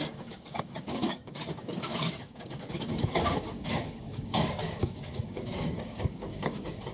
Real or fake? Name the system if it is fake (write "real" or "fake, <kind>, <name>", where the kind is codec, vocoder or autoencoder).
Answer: fake, codec, DAC